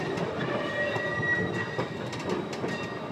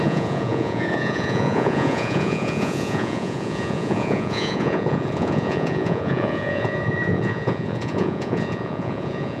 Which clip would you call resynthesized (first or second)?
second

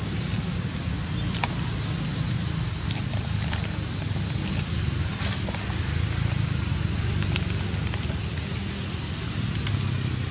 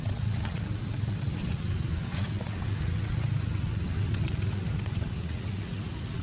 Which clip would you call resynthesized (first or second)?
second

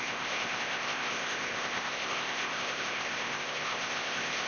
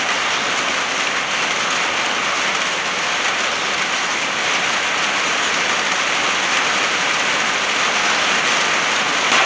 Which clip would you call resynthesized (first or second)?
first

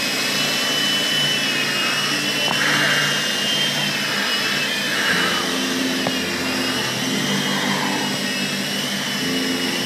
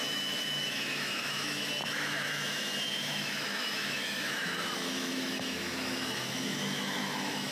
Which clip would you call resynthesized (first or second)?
second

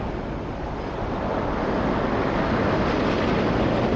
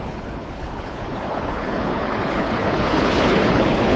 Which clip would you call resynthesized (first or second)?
second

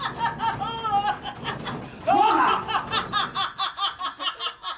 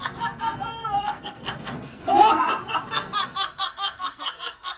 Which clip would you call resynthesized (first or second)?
second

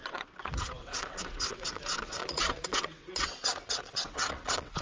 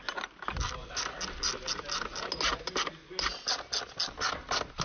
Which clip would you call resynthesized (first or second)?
first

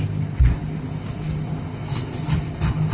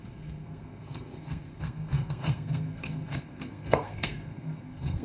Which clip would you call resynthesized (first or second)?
second